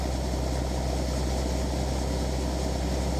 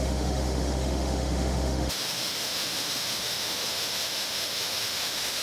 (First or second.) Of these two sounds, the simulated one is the second